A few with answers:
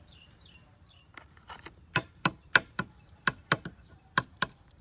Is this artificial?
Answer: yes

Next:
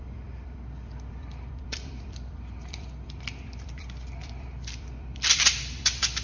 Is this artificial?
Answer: yes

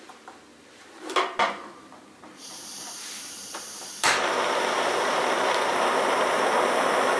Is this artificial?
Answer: yes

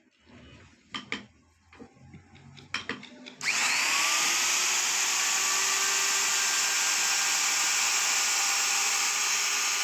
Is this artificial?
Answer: no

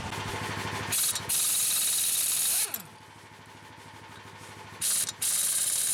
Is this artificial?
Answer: no